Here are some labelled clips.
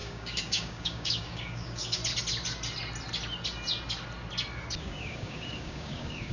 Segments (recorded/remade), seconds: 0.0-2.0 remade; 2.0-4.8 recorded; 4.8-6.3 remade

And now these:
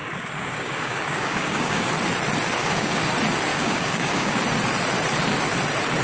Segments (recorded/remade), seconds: 0.0-1.9 remade; 1.9-2.6 recorded; 2.6-3.1 remade; 3.1-3.5 recorded; 3.5-4.4 remade; 4.4-6.0 recorded

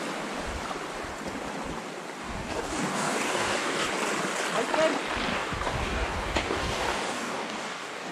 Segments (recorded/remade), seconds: 0.0-2.2 recorded; 2.2-3.9 remade; 3.9-5.3 recorded; 5.3-8.1 remade